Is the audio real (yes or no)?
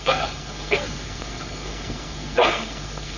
no